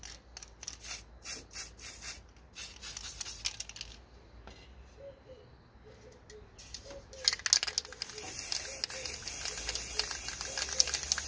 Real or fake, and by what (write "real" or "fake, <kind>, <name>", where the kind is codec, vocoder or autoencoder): real